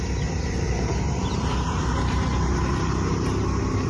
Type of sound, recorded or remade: recorded